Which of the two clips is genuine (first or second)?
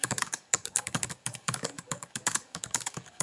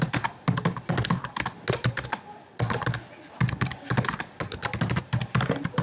second